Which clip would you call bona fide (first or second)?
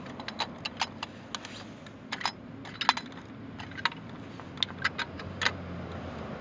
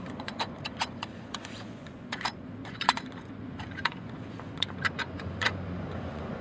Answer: first